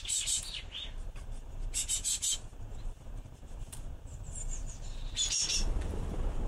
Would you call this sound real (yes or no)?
no